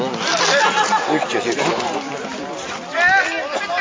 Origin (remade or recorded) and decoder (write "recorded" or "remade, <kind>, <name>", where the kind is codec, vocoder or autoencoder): recorded